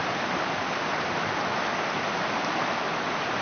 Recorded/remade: recorded